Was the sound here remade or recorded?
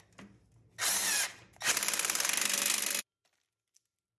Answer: recorded